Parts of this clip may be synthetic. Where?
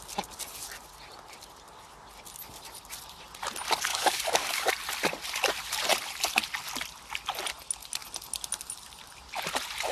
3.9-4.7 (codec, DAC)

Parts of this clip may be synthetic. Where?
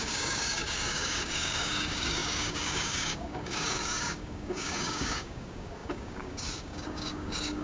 0.0-7.6 (codec, DAC)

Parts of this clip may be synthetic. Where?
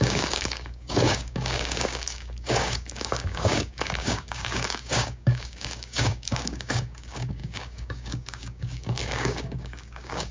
0.0-10.3 (codec, DAC)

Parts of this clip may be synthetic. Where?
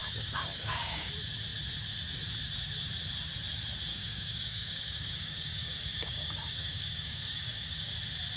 0.0-1.1 (codec, DAC); 3.9-7.9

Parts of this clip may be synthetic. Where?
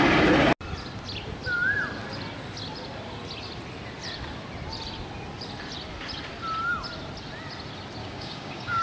8.0-8.8 (codec, DAC)